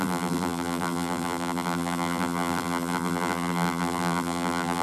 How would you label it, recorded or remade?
remade